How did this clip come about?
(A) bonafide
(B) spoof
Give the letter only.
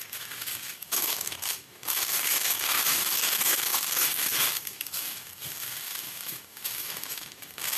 B